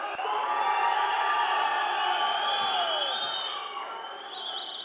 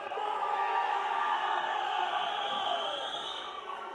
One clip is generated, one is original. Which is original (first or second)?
first